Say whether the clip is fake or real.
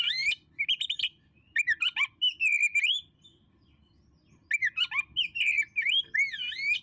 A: real